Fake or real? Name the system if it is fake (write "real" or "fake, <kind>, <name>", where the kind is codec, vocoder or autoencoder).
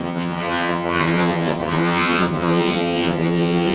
fake, vocoder, HiFi-GAN